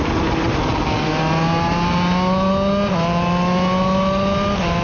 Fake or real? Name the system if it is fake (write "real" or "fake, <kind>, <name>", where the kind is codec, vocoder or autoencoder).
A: real